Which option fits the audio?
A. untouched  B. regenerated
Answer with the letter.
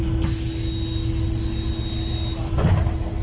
A